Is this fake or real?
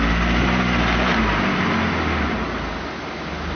real